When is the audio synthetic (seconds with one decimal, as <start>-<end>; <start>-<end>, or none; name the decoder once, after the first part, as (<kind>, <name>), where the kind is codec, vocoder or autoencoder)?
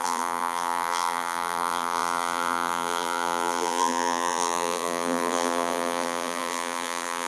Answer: 0.0-7.3 (vocoder, BigVGAN v2)